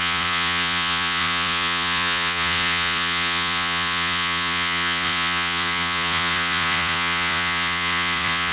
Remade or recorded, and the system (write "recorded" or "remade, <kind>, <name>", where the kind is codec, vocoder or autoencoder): remade, vocoder, Vocos